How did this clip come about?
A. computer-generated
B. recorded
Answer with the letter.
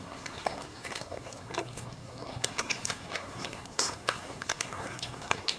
A